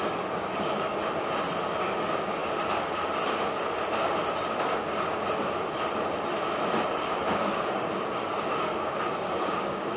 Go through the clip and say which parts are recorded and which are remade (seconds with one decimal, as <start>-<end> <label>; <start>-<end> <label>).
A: 0.0-1.0 remade; 1.0-1.8 recorded; 1.8-2.4 remade; 2.4-6.8 recorded; 6.8-10.0 remade

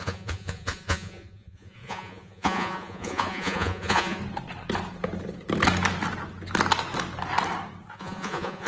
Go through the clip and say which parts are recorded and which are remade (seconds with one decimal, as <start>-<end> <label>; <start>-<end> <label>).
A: 0.0-4.2 remade; 4.2-7.9 recorded; 7.9-8.7 remade